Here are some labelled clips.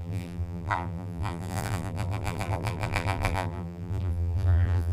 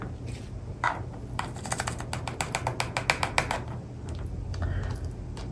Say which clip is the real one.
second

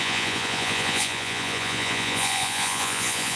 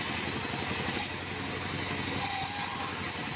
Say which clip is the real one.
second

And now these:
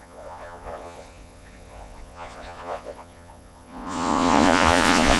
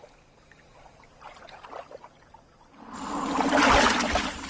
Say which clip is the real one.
second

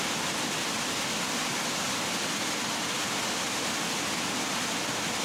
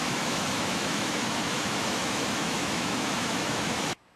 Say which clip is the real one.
first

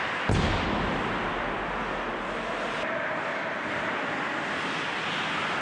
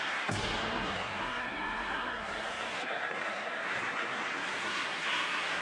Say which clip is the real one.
first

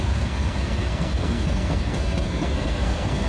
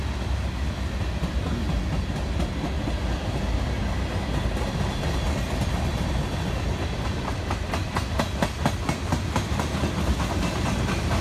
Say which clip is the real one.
second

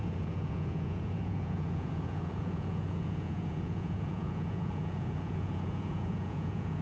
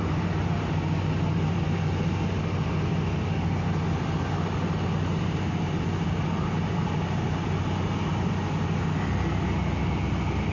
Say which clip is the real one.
second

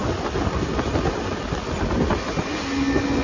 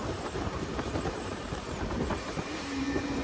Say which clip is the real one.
first